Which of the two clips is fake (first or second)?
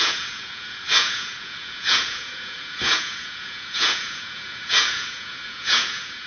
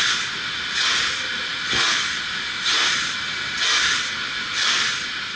first